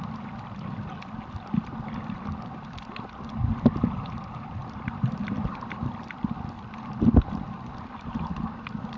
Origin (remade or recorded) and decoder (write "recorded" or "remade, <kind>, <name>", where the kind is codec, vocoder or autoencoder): recorded